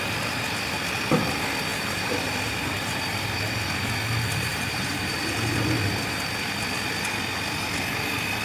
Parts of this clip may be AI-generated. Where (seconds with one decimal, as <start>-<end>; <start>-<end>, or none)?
1.7-3.1; 4.5-5.3